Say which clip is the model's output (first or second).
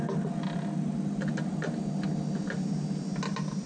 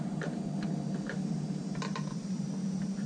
second